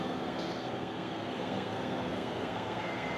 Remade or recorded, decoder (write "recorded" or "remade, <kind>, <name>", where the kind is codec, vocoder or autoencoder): remade, codec, SNAC